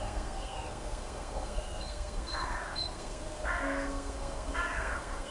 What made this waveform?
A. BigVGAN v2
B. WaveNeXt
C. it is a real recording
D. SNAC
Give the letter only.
D